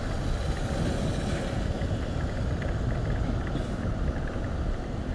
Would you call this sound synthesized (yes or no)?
no